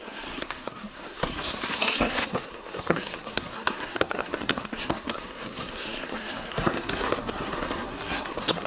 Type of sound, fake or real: fake